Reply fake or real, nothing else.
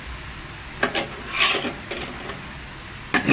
real